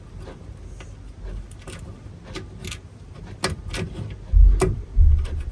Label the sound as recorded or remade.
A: recorded